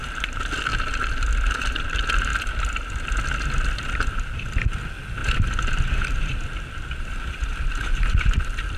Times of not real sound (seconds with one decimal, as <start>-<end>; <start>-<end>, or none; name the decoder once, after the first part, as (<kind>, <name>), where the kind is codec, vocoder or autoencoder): 0.7-1.3 (vocoder, BigVGAN v2); 2.3-3.0; 5.2-5.8; 6.3-7.5